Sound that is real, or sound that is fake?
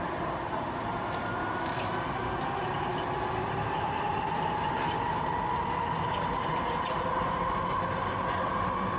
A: real